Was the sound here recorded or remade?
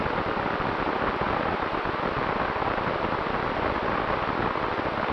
recorded